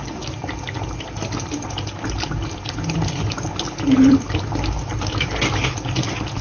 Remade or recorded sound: recorded